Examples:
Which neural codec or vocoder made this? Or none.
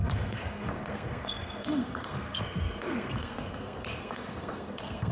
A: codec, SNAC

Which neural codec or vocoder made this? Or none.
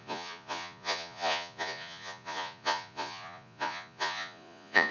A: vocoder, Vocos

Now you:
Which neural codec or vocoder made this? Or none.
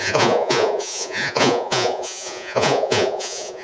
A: vocoder, Vocos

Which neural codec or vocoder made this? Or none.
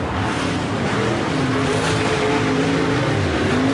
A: none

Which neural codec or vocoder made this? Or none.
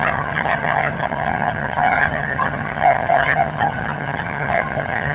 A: vocoder, HiFi-GAN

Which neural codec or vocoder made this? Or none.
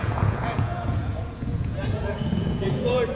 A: vocoder, Vocos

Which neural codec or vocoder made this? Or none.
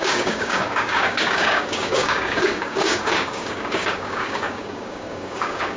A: codec, DAC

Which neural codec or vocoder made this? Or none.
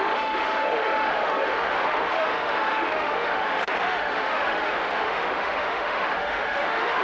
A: autoencoder, DAC-VAE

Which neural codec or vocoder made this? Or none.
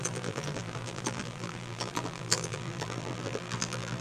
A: vocoder, BigVGAN v2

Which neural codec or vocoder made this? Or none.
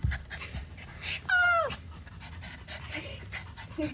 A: none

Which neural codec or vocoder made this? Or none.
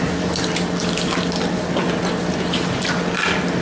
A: none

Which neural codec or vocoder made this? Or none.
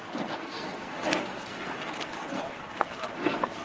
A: codec, SNAC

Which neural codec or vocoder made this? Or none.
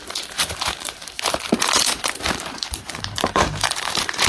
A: vocoder, BigVGAN v2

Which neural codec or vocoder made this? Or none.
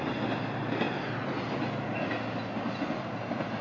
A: none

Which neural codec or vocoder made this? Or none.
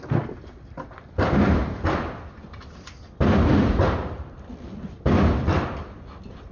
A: none